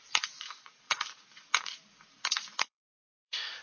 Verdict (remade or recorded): remade